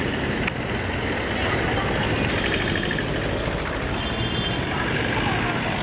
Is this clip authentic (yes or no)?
yes